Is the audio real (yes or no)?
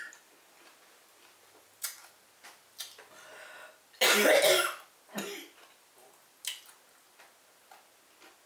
yes